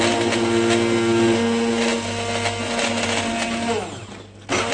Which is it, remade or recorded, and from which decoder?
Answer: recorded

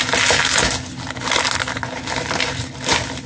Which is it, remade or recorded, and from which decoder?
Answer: recorded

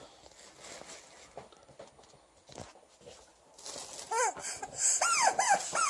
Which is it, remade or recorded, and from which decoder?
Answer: recorded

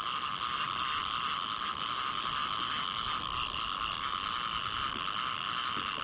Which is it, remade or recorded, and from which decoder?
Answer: recorded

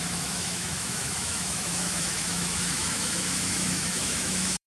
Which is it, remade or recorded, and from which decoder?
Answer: remade, autoencoder, DAC-VAE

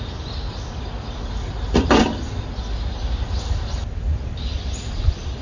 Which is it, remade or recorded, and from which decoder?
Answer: recorded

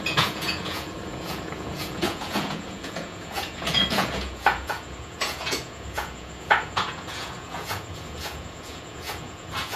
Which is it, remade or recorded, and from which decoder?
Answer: remade, vocoder, Vocos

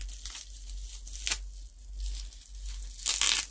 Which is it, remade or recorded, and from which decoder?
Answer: recorded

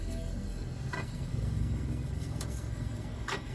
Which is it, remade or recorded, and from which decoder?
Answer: remade, codec, SNAC